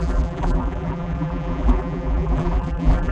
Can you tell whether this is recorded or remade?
remade